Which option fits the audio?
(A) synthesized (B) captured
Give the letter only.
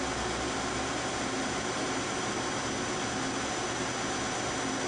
B